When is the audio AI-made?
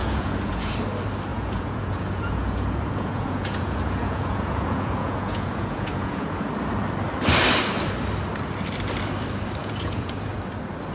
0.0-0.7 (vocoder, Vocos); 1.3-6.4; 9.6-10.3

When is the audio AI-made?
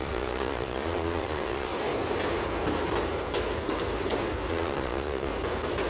0.0-1.7 (vocoder, Vocos); 4.5-5.3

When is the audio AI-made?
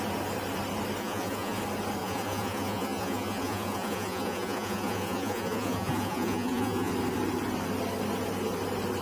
1.0-1.6 (vocoder, Vocos); 2.0-6.9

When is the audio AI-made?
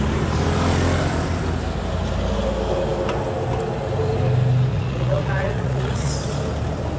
4.7-6.1 (vocoder, Vocos)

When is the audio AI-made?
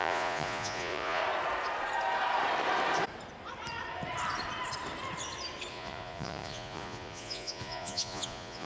0.0-1.2 (vocoder, Vocos); 5.7-8.7